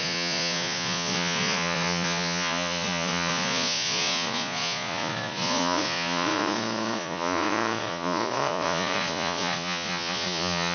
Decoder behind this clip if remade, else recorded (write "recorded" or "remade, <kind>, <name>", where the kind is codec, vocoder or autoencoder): remade, vocoder, Vocos